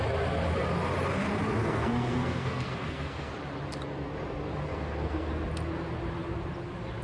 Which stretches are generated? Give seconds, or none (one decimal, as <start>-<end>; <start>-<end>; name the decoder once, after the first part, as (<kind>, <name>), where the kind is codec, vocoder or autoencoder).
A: 1.6-3.3 (codec, SNAC); 4.7-5.3